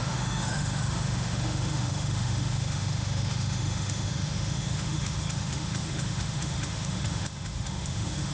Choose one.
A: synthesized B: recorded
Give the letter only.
A